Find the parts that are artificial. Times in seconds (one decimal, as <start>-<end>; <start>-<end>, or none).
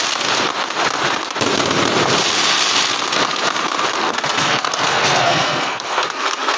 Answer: 4.0-6.6